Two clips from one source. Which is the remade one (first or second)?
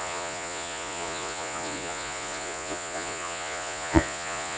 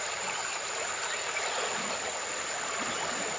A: first